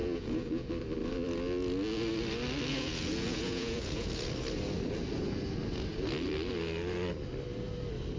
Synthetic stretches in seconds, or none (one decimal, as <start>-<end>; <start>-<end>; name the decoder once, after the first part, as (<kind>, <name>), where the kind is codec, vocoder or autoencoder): 0.0-0.7 (vocoder, Vocos); 2.7-4.3